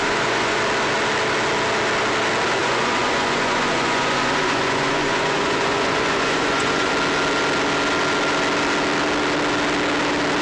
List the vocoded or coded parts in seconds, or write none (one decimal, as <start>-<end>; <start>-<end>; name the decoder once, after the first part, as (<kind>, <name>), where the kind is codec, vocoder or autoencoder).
0.0-0.6 (vocoder, Vocos); 2.6-6.9